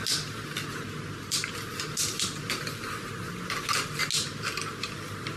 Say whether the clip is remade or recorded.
recorded